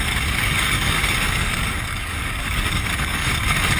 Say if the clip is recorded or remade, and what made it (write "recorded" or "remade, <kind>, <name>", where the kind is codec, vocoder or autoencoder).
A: remade, codec, DAC